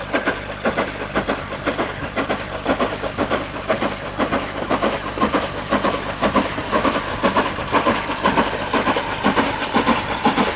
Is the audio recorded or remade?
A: remade